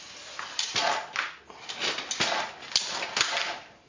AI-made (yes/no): no